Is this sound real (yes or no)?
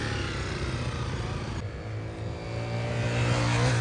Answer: yes